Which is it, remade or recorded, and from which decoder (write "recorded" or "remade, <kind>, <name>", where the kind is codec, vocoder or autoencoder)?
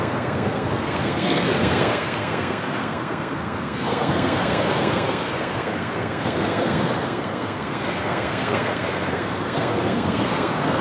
remade, codec, SNAC